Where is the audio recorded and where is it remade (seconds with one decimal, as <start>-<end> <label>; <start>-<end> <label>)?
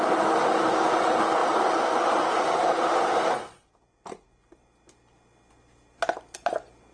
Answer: 0.0-6.9 recorded